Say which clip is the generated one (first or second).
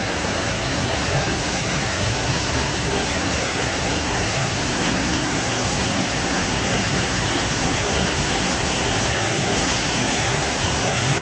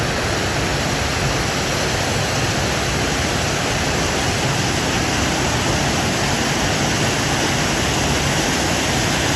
first